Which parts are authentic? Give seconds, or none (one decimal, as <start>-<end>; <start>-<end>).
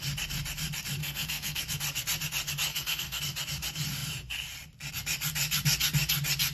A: 0.0-1.0; 1.6-2.7; 3.2-6.5